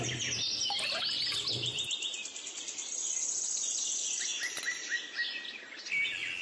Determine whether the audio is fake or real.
real